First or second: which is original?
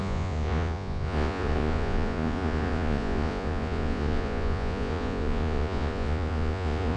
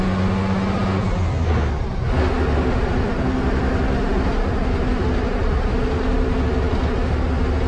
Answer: second